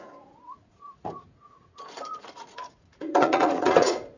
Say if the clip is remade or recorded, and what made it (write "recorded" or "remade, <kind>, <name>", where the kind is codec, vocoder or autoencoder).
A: remade, vocoder, Vocos